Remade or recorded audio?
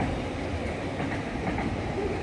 recorded